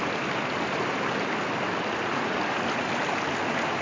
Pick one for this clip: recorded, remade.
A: recorded